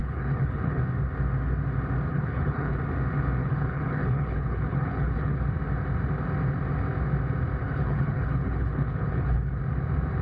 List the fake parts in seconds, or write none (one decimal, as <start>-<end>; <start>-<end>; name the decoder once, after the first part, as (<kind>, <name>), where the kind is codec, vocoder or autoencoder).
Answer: 0.0-0.8 (codec, HILCodec); 2.1-2.8; 3.4-5.4; 7.6-9.6